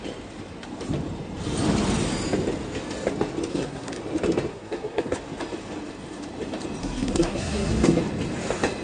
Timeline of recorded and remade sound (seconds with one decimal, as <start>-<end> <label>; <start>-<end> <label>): 0.0-3.5 recorded; 3.5-4.0 remade; 4.0-4.5 recorded; 4.5-5.2 remade; 5.2-6.8 recorded; 6.8-8.0 remade; 8.0-8.8 recorded